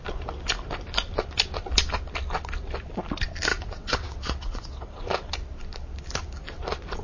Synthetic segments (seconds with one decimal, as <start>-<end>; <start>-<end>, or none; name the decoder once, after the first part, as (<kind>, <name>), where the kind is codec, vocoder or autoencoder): 3.5-5.3 (vocoder, WaveNeXt)